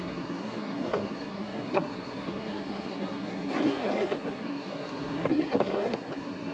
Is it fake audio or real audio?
fake